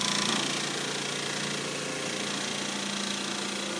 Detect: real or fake real